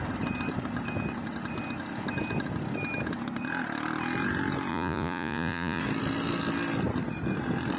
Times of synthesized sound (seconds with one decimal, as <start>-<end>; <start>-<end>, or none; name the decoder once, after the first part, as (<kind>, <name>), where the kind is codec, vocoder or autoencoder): 4.7-5.8 (vocoder, Vocos)

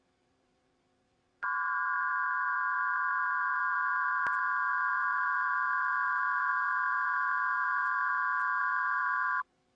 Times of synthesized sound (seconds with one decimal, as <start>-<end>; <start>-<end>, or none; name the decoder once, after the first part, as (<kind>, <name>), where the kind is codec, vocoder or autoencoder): 0.0-8.1 (vocoder, BigVGAN v2); 8.6-9.8

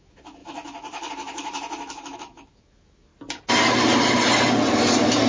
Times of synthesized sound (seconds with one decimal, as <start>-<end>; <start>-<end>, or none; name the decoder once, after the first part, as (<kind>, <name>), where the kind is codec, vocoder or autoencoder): 0.0-3.1 (autoencoder, DAC-VAE)

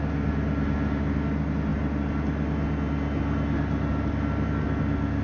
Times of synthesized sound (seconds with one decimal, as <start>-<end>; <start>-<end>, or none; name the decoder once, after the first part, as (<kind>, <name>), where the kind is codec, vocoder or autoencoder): none